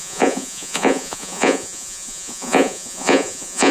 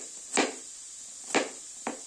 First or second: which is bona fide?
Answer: second